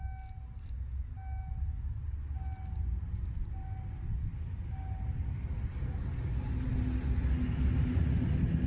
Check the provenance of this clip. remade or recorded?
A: recorded